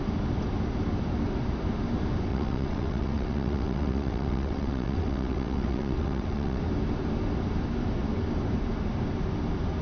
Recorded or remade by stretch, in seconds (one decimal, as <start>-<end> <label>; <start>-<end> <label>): 0.0-2.3 recorded; 2.3-6.6 remade; 6.6-9.8 recorded